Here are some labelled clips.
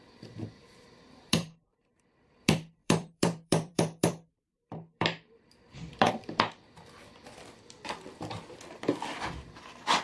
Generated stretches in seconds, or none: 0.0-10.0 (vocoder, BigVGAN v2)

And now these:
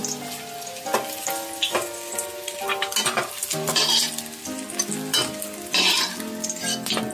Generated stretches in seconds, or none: 3.5-4.1 (vocoder, BigVGAN v2)

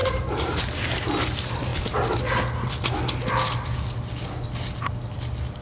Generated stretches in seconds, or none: 0.0-0.6 (vocoder, BigVGAN v2)

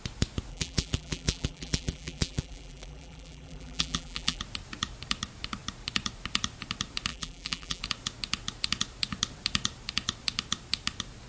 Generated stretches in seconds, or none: 0.5-4.4 (vocoder, BigVGAN v2); 7.1-7.8

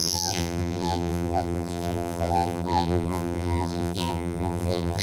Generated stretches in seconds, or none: 0.0-5.0 (vocoder, BigVGAN v2)